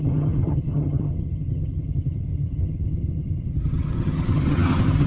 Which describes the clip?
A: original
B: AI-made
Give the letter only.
B